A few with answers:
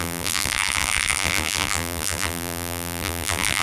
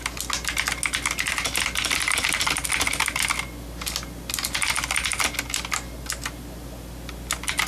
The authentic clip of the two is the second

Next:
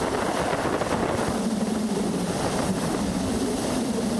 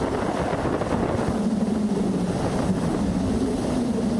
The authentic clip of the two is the second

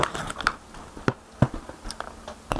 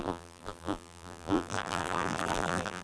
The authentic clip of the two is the first